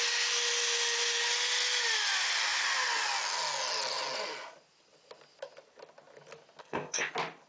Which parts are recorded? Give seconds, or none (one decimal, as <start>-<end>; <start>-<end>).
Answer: 0.0-6.6; 7.1-7.5